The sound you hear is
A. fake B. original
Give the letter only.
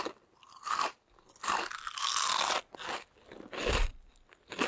B